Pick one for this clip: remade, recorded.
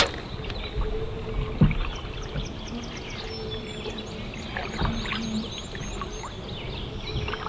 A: recorded